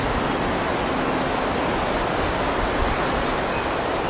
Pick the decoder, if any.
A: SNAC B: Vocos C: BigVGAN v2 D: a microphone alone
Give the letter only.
D